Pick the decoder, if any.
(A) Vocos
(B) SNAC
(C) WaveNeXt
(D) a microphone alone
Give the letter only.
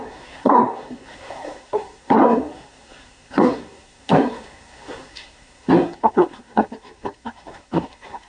B